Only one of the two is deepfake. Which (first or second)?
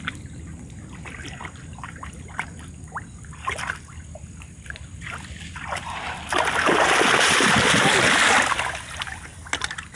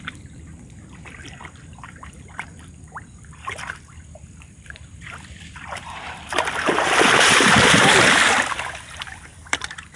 second